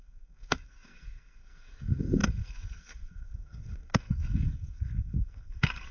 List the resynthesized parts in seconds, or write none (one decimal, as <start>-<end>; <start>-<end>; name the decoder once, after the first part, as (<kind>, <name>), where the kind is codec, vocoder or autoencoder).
0.0-5.9 (codec, SNAC)